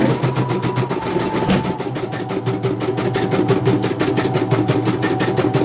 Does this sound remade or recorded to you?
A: recorded